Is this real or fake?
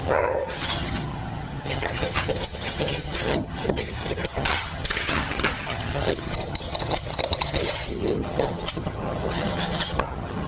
fake